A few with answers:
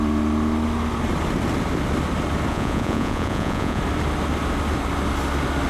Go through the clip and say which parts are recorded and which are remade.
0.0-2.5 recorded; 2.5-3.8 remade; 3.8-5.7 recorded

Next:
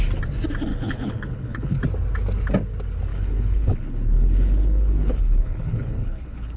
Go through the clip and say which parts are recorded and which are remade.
0.0-0.7 recorded; 0.7-1.8 remade; 1.8-3.1 recorded; 3.1-6.6 remade

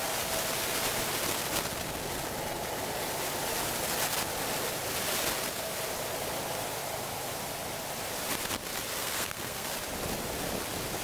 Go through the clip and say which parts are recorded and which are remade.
0.0-9.0 recorded; 9.0-9.7 remade; 9.7-11.0 recorded

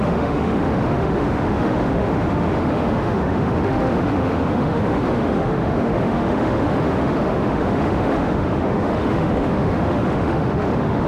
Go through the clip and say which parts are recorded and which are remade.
0.0-11.1 remade

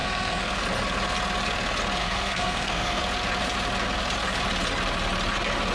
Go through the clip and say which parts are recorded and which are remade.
0.0-0.6 remade; 0.6-2.0 recorded; 2.0-3.0 remade; 3.0-5.7 recorded

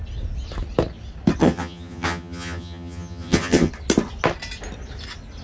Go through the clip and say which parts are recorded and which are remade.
0.0-1.4 recorded; 1.4-3.7 remade; 3.7-5.4 recorded

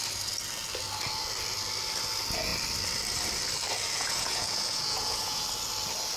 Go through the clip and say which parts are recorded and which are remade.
0.0-3.9 recorded; 3.9-5.4 remade; 5.4-6.2 recorded